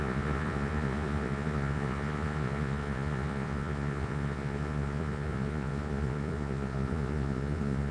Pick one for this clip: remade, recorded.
remade